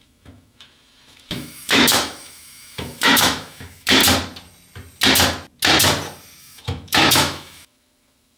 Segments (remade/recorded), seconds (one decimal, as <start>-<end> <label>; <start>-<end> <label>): 0.0-4.0 remade; 4.0-6.4 recorded; 6.4-8.4 remade